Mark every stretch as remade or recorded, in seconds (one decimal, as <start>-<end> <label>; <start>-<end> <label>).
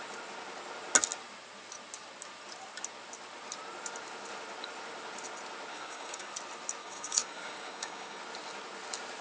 0.0-5.7 recorded; 5.7-6.3 remade; 6.3-6.8 recorded; 6.8-8.2 remade; 8.2-9.2 recorded